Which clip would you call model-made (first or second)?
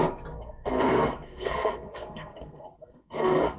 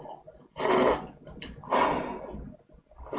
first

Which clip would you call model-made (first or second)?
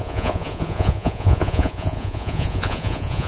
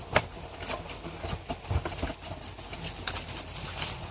first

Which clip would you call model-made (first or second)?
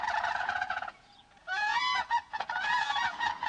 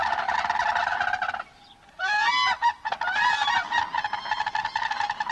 first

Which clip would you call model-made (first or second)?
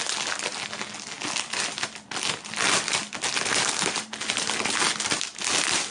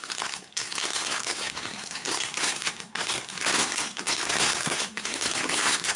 second